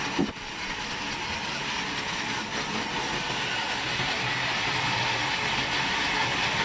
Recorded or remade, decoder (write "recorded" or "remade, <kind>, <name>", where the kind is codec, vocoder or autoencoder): recorded